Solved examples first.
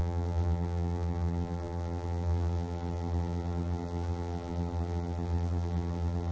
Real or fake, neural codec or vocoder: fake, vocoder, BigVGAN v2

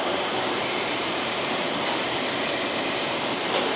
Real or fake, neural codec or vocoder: fake, vocoder, BigVGAN v2